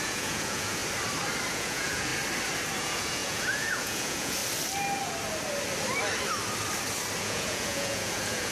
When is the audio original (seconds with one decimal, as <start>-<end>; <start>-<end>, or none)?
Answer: 0.8-1.5; 2.1-2.8; 4.4-7.2